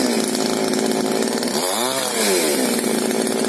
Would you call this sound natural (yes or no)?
yes